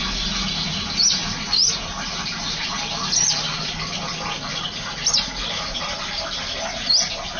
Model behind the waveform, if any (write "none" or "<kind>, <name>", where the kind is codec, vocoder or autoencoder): none